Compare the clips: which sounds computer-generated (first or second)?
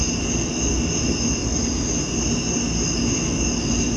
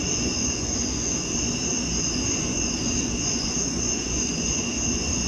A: second